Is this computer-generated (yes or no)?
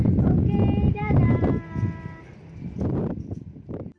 no